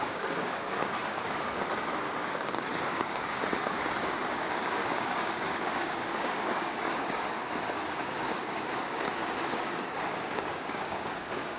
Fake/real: fake